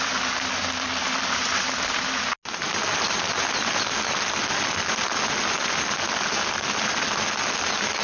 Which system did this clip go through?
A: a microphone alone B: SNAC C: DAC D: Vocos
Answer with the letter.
A